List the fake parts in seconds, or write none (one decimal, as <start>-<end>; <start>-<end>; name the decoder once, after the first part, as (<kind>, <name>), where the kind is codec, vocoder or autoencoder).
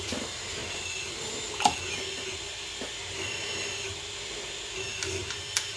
0.0-0.6 (vocoder, BigVGAN v2); 2.7-4.9